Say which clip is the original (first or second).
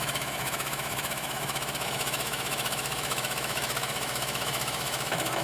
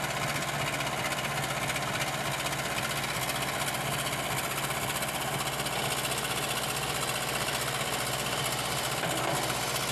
second